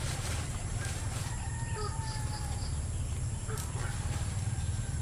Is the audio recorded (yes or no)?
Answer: yes